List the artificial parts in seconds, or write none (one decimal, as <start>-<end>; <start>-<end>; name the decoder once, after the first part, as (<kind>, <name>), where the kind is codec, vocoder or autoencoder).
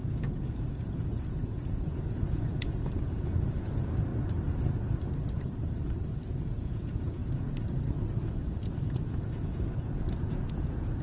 0.0-4.1 (vocoder, Vocos); 6.4-7.2; 8.2-11.0